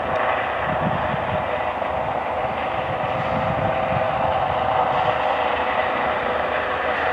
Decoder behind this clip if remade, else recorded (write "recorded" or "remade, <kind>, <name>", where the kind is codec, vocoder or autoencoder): recorded